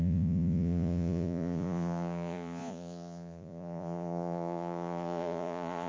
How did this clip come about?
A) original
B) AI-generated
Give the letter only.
B